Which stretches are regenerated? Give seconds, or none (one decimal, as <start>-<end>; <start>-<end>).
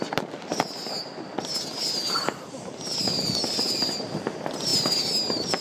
none